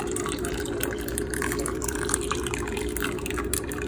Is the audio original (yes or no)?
no